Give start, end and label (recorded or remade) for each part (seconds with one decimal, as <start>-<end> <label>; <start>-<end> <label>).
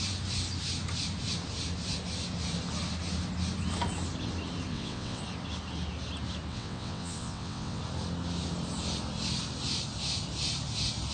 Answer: 0.0-4.7 recorded; 4.7-5.2 remade; 5.2-6.5 recorded; 6.5-7.8 remade; 7.8-11.1 recorded